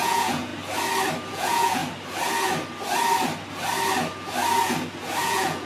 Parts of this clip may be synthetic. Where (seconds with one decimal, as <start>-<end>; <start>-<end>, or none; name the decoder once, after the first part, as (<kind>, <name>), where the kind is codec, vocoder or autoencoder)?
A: 0.0-0.5 (vocoder, Vocos); 1.3-1.8; 5.2-5.7